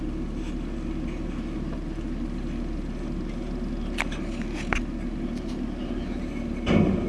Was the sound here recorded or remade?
recorded